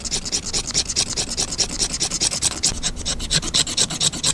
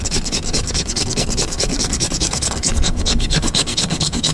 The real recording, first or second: first